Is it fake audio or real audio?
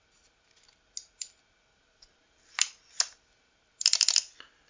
real